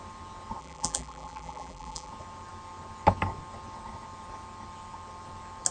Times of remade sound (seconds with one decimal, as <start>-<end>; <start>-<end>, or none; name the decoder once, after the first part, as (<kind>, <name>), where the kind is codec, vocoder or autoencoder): 0.6-2.1 (vocoder, BigVGAN v2)